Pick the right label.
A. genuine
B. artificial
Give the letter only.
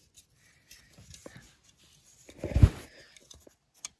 A